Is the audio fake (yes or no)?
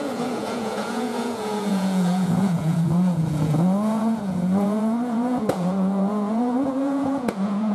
yes